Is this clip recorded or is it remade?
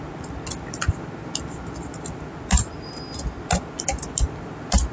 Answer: recorded